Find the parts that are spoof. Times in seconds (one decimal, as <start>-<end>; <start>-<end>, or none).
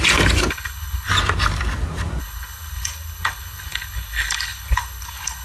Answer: 0.5-1.1; 2.2-5.4